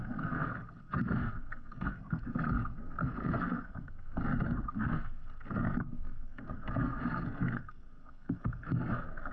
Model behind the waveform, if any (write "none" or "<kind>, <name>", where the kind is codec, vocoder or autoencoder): codec, SNAC